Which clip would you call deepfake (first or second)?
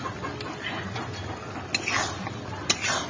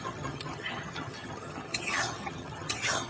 second